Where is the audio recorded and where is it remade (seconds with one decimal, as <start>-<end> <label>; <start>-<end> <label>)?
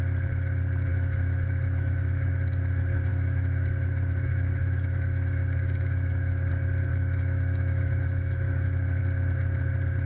0.0-0.9 recorded; 0.9-2.3 remade; 2.3-3.1 recorded; 3.1-6.5 remade; 6.5-6.9 recorded; 6.9-9.0 remade; 9.0-10.1 recorded